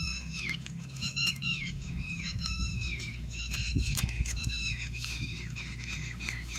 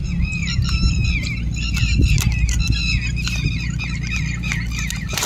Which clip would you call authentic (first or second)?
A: second